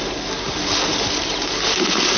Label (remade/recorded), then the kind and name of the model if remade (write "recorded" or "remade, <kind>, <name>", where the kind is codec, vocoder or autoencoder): recorded